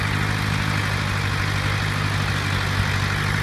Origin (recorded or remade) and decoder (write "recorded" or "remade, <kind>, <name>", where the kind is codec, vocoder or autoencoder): recorded